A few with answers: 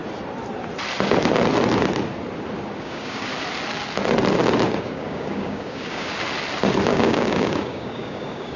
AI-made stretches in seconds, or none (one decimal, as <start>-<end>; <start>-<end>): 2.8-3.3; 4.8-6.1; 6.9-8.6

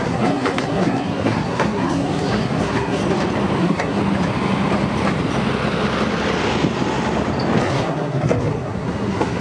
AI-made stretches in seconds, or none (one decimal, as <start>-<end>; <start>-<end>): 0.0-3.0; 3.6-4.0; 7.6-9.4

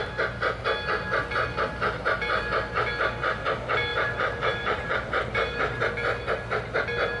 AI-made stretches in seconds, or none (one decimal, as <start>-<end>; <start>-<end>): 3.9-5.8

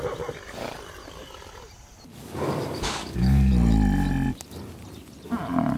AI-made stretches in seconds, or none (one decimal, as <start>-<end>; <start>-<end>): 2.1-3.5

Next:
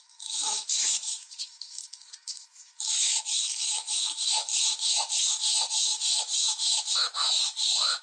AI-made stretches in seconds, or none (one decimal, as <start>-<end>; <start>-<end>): 0.0-8.0

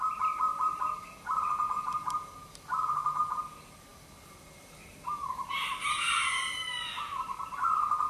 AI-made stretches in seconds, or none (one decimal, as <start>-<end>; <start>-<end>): none

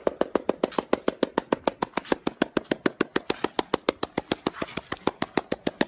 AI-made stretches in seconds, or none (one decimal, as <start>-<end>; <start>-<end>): none

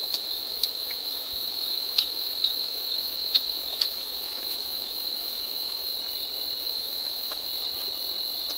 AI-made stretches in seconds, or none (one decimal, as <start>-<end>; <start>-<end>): 0.0-5.9; 6.6-7.5